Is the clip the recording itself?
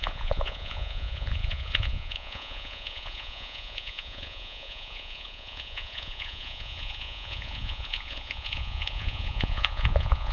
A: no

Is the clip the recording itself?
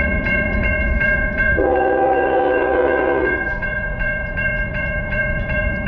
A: no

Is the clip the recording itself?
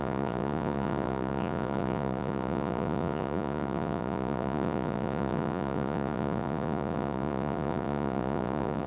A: no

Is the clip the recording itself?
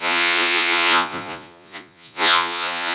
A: no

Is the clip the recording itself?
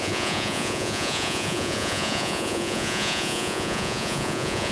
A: no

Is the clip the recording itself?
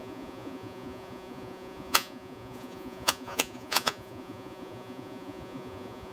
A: no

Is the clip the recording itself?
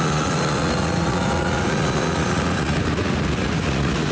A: no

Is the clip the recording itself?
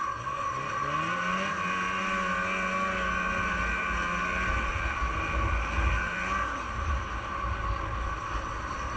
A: yes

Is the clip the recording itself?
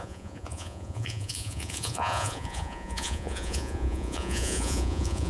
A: no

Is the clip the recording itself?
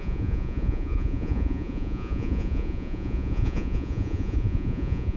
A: no